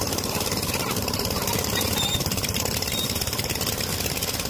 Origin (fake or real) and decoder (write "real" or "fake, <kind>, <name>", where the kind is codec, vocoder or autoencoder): fake, vocoder, BigVGAN v2